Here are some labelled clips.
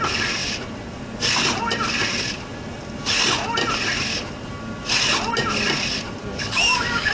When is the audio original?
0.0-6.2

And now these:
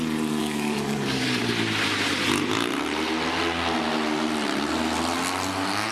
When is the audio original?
0.0-0.4; 1.4-5.9

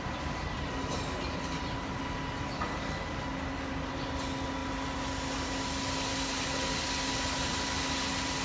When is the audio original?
0.0-8.4

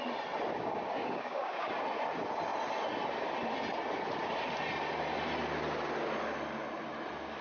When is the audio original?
0.0-0.5; 1.7-7.4

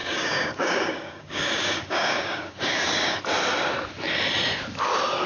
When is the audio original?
3.2-5.3

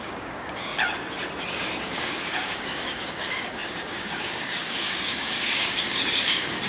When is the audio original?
0.7-1.5

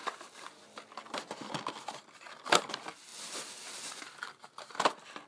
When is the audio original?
0.0-5.3